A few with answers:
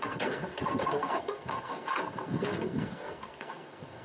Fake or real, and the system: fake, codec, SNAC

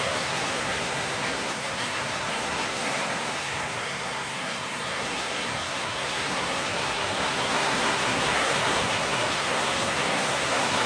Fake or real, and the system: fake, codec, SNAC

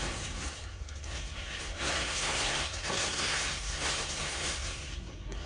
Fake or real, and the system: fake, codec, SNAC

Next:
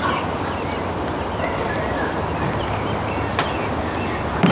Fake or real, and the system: real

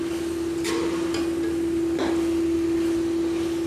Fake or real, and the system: real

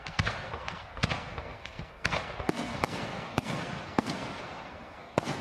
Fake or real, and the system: fake, codec, SNAC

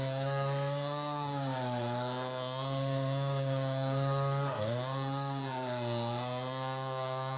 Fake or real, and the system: fake, codec, SNAC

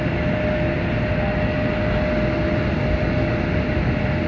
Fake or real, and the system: real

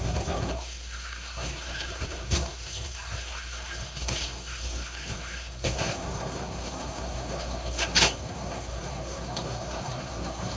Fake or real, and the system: fake, codec, SNAC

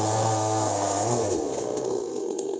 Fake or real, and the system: fake, codec, SNAC